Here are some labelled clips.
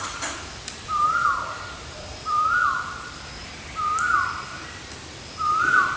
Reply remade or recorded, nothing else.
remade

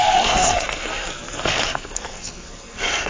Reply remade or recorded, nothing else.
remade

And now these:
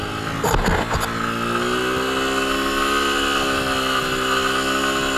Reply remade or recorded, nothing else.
recorded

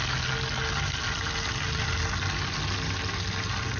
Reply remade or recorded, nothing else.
recorded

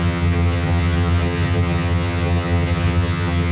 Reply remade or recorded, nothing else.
remade